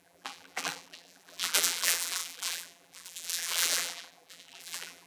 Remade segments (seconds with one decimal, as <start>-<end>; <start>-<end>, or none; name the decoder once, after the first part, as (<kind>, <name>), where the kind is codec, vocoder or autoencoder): 0.0-5.1 (vocoder, BigVGAN v2)